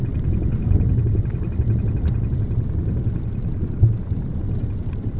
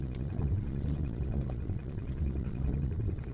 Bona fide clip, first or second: first